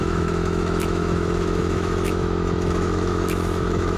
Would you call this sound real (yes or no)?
no